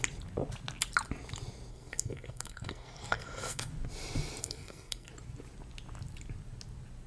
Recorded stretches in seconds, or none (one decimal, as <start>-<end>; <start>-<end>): 0.0-1.7; 3.7-4.4; 5.1-7.1